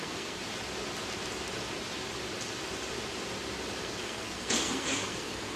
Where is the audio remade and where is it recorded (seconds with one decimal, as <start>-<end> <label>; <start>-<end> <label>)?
0.0-0.4 remade; 0.4-3.8 recorded; 3.8-5.6 remade

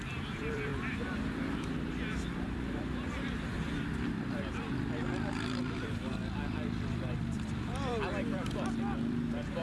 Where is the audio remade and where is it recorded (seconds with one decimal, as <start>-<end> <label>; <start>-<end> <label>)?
0.0-6.2 remade; 6.2-6.8 recorded; 6.8-9.6 remade

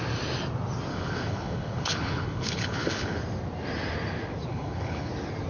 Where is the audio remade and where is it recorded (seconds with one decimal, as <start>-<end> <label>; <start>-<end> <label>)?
0.0-0.9 recorded; 0.9-3.2 remade; 3.2-4.5 recorded; 4.5-5.1 remade; 5.1-5.5 recorded

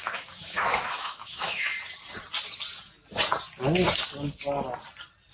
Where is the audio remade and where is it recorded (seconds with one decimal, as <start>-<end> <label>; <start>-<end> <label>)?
0.0-1.7 remade; 1.7-5.3 recorded

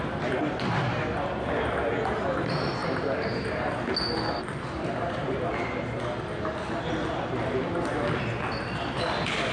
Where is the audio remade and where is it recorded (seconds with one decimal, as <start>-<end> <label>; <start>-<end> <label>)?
0.0-2.8 recorded; 2.8-3.5 remade; 3.5-4.5 recorded; 4.5-5.5 remade; 5.5-9.5 recorded

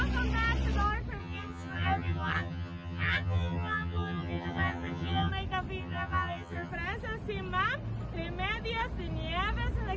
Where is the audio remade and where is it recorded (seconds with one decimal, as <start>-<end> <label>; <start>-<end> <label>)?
0.0-1.2 recorded; 1.2-5.3 remade; 5.3-5.8 recorded; 5.8-6.7 remade; 6.7-10.0 recorded

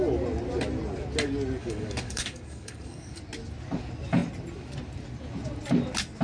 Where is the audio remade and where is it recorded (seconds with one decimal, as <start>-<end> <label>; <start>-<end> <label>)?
0.0-1.6 recorded; 1.6-3.2 remade; 3.2-6.2 recorded